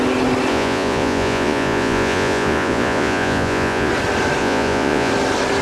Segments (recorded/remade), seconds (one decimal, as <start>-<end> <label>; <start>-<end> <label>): 0.0-0.5 recorded; 0.5-3.9 remade; 3.9-4.4 recorded; 4.4-5.1 remade; 5.1-5.6 recorded